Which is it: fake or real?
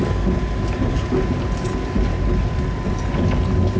real